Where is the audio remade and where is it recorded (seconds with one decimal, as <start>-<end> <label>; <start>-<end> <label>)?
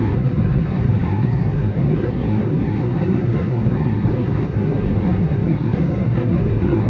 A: 0.0-6.9 remade